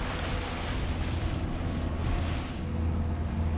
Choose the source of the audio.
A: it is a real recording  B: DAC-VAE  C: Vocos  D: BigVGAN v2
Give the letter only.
A